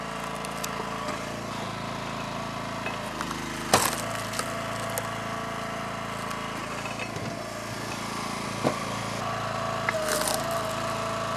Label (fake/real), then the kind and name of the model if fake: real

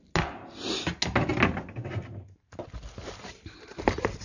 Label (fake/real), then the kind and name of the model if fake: real